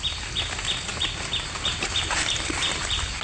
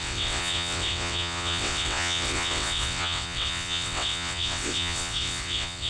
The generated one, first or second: second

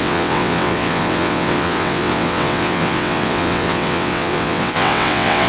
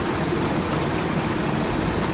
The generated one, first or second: first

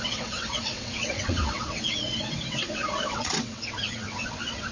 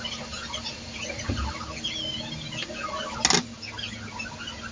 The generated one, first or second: first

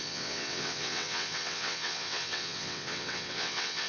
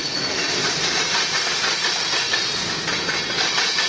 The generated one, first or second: first